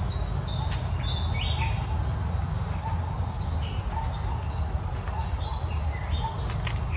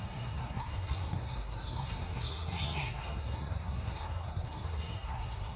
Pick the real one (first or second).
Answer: first